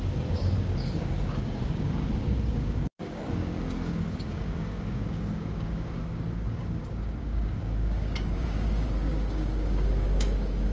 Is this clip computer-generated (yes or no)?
yes